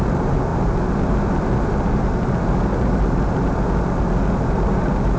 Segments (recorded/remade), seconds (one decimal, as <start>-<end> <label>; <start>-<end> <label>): 0.0-5.2 recorded